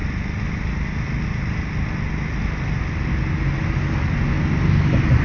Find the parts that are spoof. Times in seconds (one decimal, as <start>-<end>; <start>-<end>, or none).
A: none